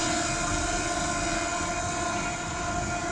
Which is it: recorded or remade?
recorded